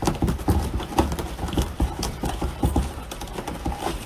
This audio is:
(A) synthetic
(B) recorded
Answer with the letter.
A